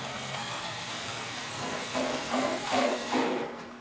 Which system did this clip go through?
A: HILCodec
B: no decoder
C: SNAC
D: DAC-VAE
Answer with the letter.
C